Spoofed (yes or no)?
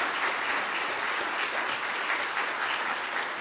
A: no